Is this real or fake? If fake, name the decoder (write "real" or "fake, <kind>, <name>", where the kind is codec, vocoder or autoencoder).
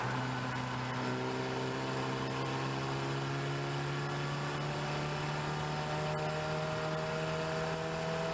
real